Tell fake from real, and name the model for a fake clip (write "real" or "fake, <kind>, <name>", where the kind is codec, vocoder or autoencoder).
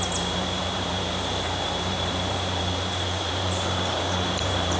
fake, vocoder, BigVGAN v2